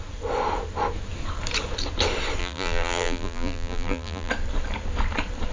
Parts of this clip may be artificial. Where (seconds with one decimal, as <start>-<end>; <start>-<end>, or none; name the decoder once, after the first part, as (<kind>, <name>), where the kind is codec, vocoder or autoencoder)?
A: 2.4-4.3 (vocoder, BigVGAN v2)